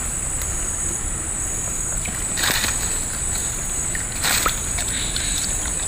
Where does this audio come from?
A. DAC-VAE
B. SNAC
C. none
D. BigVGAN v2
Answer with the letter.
C